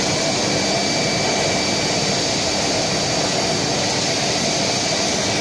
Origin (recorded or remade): recorded